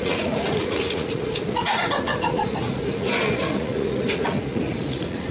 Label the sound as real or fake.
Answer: fake